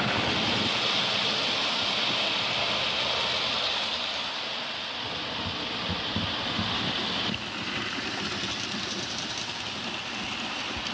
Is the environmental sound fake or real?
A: real